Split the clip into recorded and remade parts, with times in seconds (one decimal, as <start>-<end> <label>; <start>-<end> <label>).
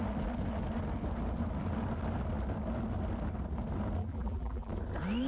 0.0-4.0 recorded; 4.0-4.7 remade; 4.7-5.3 recorded